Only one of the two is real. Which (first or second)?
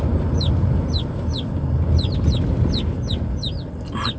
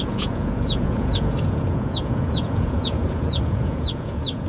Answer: first